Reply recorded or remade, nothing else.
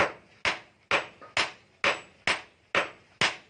recorded